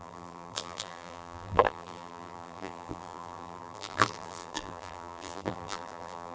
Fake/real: fake